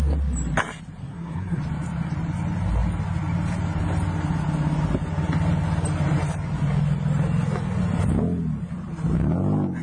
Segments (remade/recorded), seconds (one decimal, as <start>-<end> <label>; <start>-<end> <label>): 0.0-1.0 recorded; 1.0-1.6 remade; 1.6-9.8 recorded